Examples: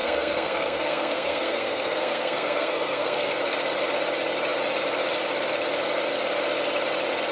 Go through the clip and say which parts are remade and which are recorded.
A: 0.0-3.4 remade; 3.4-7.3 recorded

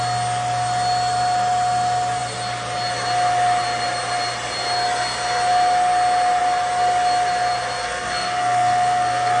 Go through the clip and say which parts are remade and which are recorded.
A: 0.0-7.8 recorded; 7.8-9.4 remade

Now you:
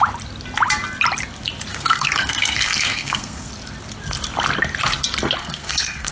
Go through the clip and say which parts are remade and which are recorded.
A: 0.0-1.7 recorded; 1.7-3.5 remade; 3.5-5.4 recorded; 5.4-6.1 remade

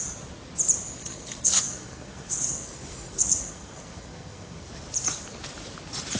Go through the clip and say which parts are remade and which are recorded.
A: 0.0-1.0 recorded; 1.0-4.7 remade; 4.7-6.2 recorded

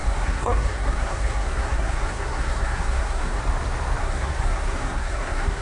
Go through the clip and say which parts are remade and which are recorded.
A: 0.0-3.4 remade; 3.4-4.0 recorded; 4.0-5.6 remade

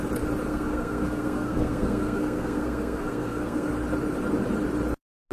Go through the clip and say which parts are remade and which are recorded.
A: 0.0-0.5 recorded; 0.5-3.7 remade; 3.7-5.3 recorded